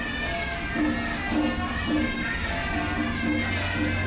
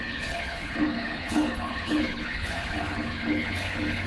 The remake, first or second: second